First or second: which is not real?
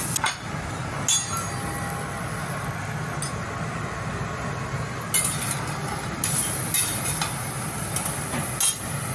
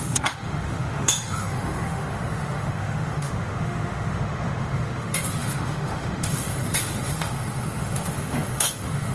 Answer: second